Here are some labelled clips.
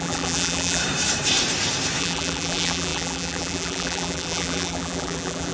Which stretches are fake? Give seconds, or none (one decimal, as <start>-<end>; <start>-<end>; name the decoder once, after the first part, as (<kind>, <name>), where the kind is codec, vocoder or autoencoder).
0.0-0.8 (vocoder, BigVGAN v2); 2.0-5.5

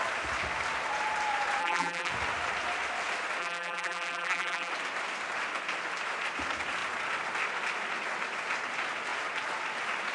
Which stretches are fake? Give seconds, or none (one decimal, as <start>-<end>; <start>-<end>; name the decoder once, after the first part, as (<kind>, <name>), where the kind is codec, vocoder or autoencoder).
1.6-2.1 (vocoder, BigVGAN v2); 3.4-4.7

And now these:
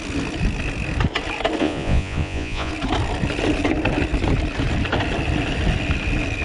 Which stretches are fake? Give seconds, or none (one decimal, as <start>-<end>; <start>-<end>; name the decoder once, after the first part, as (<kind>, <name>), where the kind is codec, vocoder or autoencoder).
1.6-2.7 (vocoder, Vocos)

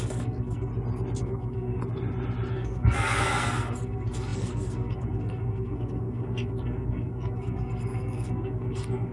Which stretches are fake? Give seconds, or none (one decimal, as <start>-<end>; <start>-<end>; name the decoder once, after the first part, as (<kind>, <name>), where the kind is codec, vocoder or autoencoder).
0.0-0.7 (codec, SNAC); 1.2-1.8; 2.5-9.1

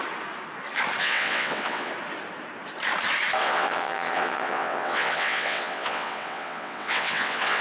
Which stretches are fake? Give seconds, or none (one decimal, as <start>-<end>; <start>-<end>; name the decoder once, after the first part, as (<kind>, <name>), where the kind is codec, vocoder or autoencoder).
1.0-1.9 (vocoder, WaveNeXt); 3.4-7.6